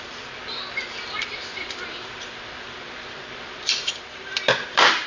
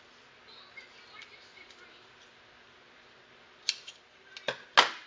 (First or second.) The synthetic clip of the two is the first